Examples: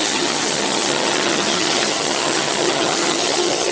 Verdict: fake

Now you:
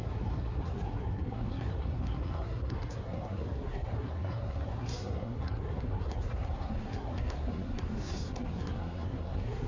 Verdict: fake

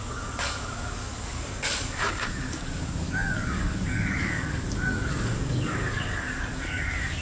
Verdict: fake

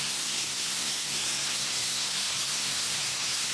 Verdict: fake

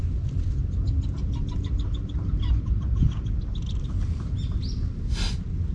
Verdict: real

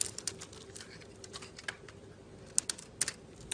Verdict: real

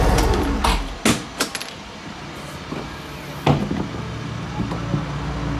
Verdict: real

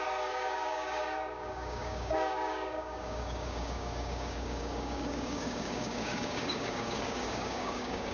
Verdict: fake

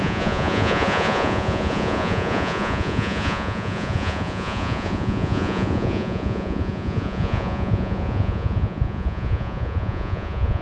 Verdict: fake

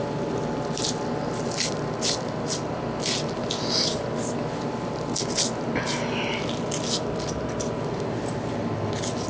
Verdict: real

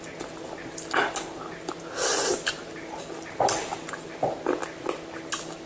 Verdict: real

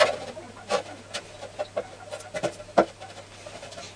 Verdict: real